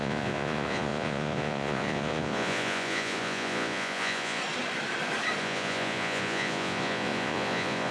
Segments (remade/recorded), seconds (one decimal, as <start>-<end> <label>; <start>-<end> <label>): 0.0-4.4 remade; 4.4-5.4 recorded; 5.4-7.9 remade